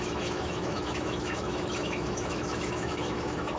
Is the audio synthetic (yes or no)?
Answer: yes